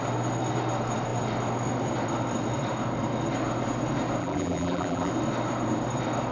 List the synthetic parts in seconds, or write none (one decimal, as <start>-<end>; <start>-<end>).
4.2-5.1